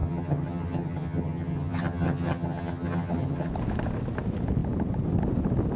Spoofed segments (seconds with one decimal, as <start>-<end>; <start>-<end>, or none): 0.0-3.5